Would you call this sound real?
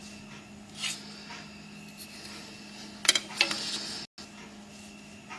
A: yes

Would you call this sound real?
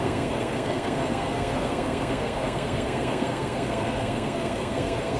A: no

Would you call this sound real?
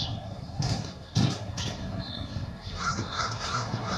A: no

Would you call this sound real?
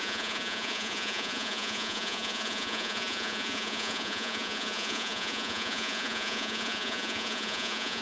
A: no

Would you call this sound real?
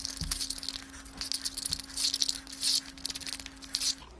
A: yes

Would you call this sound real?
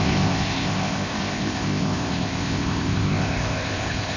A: no